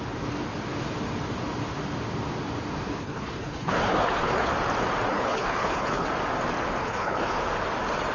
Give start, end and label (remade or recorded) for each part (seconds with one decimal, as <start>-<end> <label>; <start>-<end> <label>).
0.0-3.0 recorded; 3.0-4.5 remade; 4.5-5.1 recorded; 5.1-6.1 remade; 6.1-6.8 recorded; 6.8-7.4 remade; 7.4-8.1 recorded